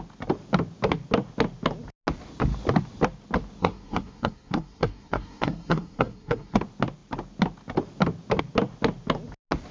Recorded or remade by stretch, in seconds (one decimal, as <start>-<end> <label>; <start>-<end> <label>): 0.0-3.6 recorded; 3.6-6.6 remade; 6.6-9.7 recorded